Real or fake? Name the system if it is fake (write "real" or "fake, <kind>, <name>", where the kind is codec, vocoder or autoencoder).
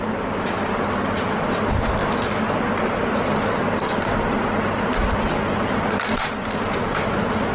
real